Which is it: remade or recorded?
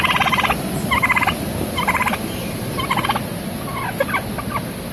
recorded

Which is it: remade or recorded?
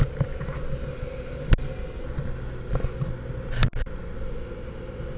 recorded